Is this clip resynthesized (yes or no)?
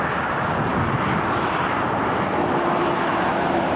no